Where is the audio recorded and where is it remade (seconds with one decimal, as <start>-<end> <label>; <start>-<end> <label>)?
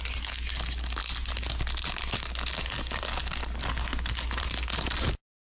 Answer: 0.0-5.6 recorded